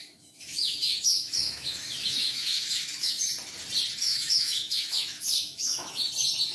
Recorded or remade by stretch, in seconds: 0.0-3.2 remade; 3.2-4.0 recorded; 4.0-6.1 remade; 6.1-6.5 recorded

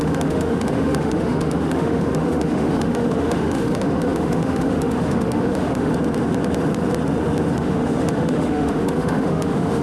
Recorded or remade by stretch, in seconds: 0.0-5.9 remade; 5.9-7.6 recorded; 7.6-9.8 remade

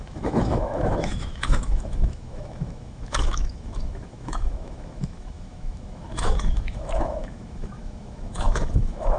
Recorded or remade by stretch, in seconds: 0.0-9.2 remade

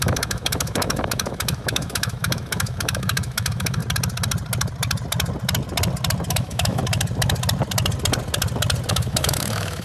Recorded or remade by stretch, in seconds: 0.0-3.8 remade; 3.8-6.3 recorded; 6.3-6.8 remade; 6.8-8.9 recorded; 8.9-9.8 remade